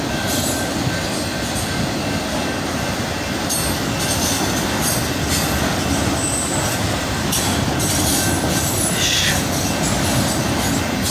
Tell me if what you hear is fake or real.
real